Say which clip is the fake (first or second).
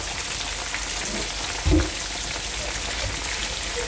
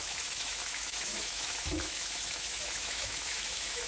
second